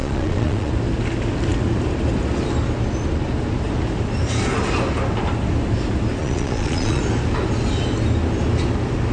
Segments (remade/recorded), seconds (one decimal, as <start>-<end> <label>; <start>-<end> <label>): 0.0-0.7 remade; 0.7-6.2 recorded; 6.2-7.0 remade; 7.0-9.1 recorded